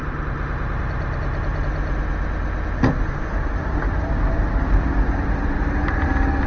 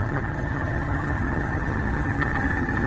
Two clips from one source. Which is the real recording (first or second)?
first